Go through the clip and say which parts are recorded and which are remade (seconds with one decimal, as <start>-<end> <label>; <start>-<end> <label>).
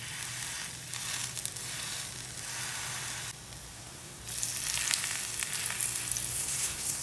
0.0-3.7 recorded; 3.7-4.2 remade; 4.2-6.3 recorded; 6.3-7.0 remade